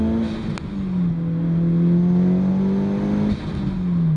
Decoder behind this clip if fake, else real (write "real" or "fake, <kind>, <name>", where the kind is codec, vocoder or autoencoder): real